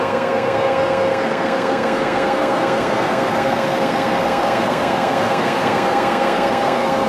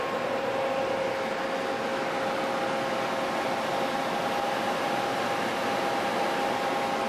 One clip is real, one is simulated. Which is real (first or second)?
second